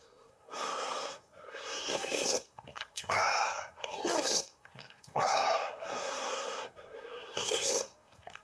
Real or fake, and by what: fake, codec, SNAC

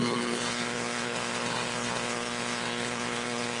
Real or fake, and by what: fake, codec, SNAC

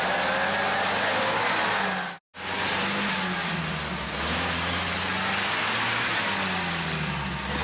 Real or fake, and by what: real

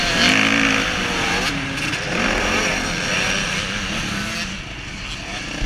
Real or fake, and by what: real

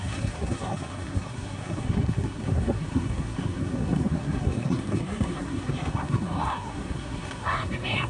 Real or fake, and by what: fake, codec, SNAC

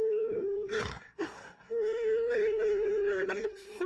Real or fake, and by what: fake, codec, SNAC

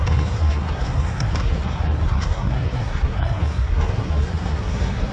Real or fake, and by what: fake, codec, SNAC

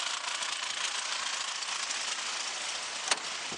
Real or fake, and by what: real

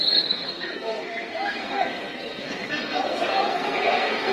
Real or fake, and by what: fake, codec, SNAC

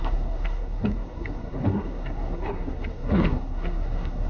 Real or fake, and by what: fake, codec, SNAC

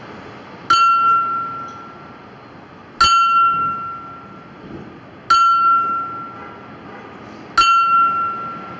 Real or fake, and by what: real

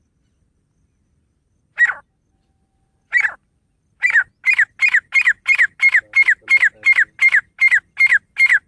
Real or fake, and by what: real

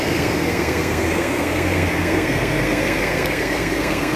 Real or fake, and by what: fake, codec, SNAC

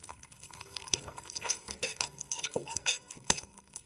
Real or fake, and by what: fake, codec, SNAC